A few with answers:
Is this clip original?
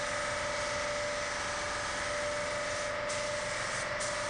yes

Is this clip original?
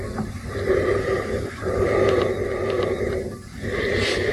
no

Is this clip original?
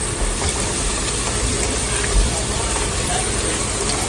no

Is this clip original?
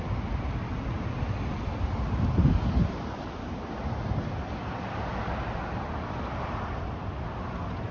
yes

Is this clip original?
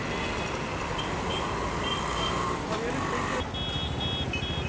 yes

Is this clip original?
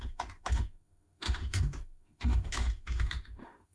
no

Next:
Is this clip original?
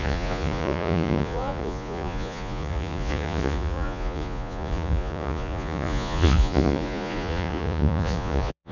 no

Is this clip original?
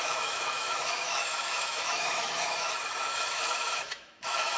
no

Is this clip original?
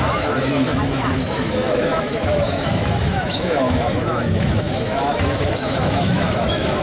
no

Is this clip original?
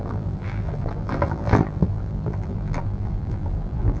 no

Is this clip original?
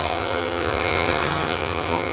no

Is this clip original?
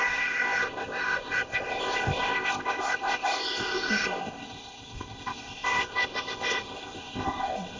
no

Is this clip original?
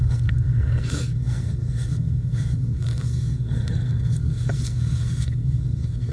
no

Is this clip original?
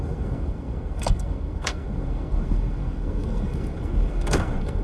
no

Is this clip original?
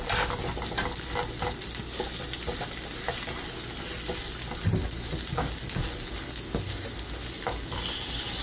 yes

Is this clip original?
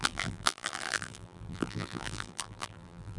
no